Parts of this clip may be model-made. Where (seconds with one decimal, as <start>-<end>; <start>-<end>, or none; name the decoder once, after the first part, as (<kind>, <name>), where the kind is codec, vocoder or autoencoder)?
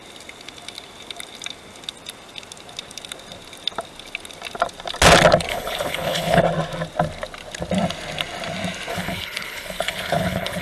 5.5-6.4 (codec, HILCodec); 8.9-10.6